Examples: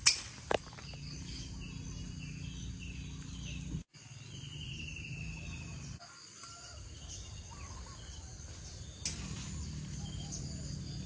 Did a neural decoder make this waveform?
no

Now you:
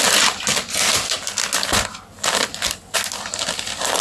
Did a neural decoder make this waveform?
no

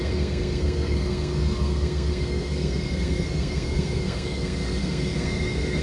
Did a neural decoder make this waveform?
yes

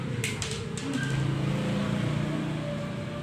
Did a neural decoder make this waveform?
no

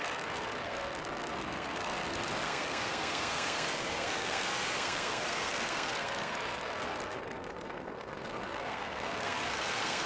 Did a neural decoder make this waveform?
yes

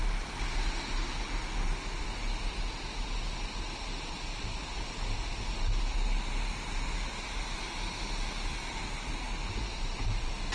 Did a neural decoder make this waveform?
no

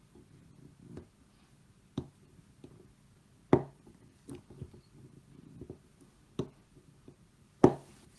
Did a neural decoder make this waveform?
no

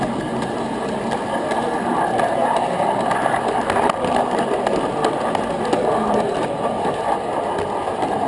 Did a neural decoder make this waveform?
no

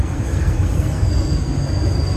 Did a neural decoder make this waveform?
yes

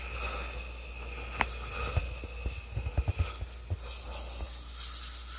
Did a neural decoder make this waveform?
no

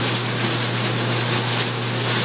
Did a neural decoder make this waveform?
no